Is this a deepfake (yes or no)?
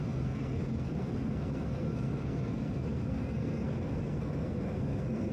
yes